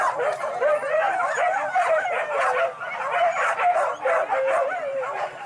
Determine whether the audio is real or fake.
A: real